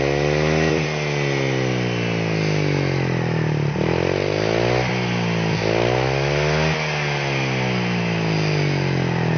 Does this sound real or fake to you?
real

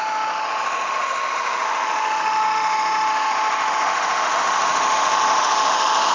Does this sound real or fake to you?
fake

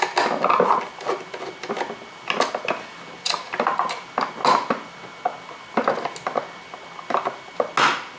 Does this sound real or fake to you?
real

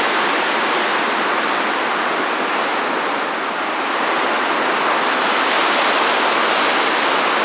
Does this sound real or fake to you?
real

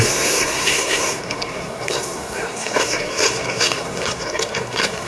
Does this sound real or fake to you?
fake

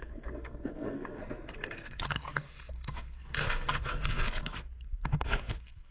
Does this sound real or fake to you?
fake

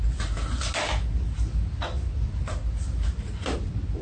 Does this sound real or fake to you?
real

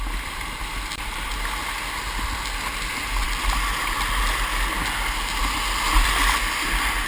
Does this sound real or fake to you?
real